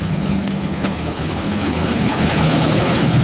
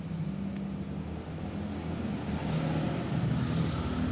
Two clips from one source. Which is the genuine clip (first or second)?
second